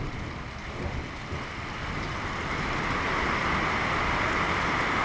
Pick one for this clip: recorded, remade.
recorded